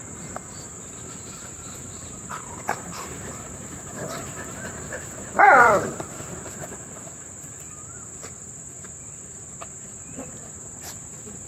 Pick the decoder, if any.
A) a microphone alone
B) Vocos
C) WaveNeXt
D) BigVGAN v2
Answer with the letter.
D